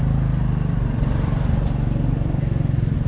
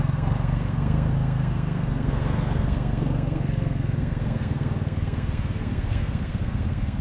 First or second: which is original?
first